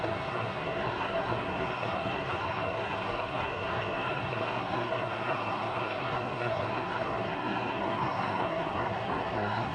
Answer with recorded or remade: remade